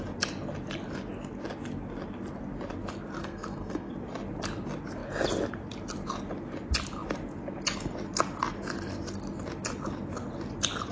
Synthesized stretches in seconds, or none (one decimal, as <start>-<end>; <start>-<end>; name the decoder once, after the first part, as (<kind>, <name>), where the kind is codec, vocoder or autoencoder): 3.2-3.9 (codec, SNAC)